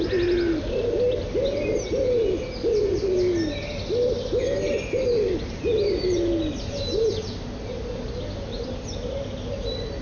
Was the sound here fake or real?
real